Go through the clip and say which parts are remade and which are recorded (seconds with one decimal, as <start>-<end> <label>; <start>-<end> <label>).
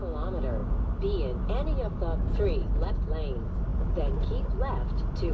0.0-5.3 recorded